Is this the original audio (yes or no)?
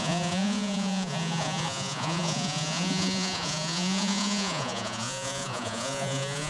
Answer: no